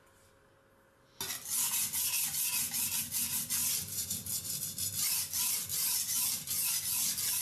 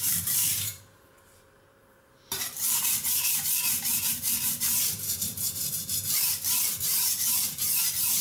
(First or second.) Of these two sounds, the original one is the first